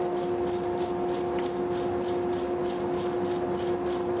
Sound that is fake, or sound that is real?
real